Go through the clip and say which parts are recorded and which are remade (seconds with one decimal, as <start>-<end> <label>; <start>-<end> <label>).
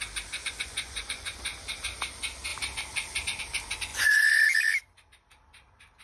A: 0.0-0.4 recorded; 0.4-1.4 remade; 1.4-3.9 recorded; 3.9-4.5 remade; 4.5-6.0 recorded